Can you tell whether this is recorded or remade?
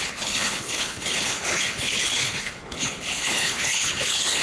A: remade